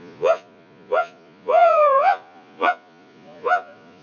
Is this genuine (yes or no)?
no